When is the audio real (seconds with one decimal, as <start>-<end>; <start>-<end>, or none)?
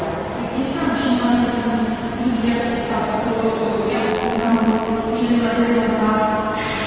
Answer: 0.0-4.1; 4.9-6.9